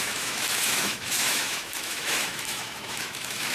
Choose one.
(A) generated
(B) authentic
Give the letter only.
A